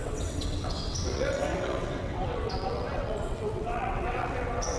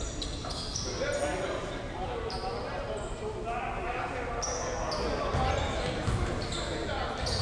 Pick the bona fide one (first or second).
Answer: second